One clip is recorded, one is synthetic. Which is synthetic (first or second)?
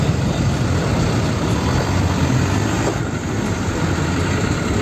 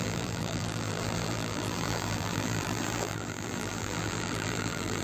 second